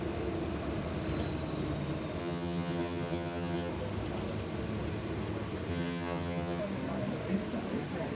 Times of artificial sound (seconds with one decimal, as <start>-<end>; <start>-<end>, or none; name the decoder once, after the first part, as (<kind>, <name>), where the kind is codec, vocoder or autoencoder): 2.2-3.7 (vocoder, HiFi-GAN); 5.7-6.6